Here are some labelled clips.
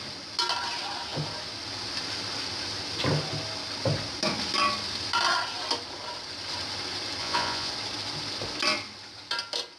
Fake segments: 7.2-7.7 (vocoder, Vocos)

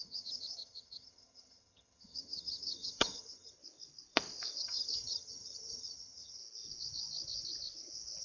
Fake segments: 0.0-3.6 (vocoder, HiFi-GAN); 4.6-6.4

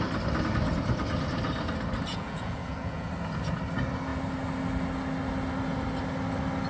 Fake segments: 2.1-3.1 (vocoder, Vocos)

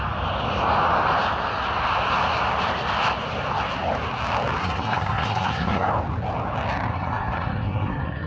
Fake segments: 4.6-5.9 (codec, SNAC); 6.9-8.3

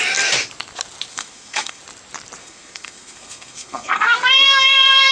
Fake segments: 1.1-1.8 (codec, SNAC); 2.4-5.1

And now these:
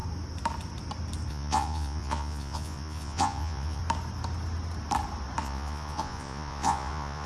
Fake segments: 1.3-3.8 (vocoder, Vocos); 5.4-7.3